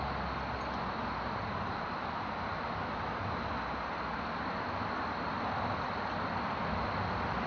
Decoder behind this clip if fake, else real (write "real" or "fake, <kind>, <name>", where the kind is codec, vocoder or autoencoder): real